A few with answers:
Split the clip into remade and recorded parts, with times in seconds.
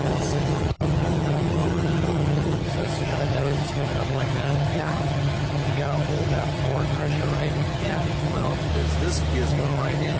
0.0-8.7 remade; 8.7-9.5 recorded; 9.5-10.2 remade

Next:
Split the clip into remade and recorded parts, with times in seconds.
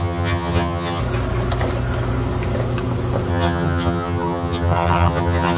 0.0-1.0 remade; 1.0-3.3 recorded; 3.3-5.6 remade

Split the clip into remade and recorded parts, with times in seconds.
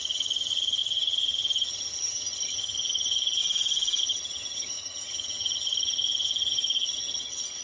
0.0-3.4 remade; 3.4-4.0 recorded; 4.0-7.6 remade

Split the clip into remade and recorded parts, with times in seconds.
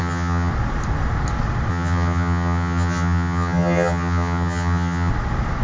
0.0-0.5 remade; 0.5-1.7 recorded; 1.7-5.1 remade; 5.1-5.6 recorded